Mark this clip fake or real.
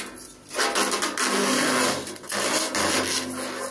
real